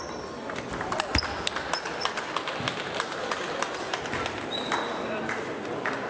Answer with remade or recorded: recorded